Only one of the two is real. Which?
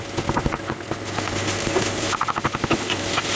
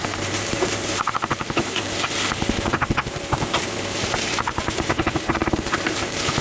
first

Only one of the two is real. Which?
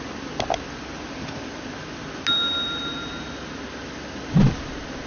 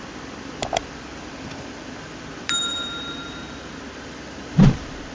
first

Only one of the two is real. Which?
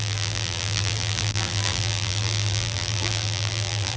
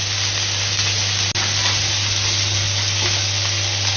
second